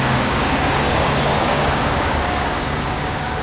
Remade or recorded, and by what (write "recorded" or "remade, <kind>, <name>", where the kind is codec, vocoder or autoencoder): remade, codec, DAC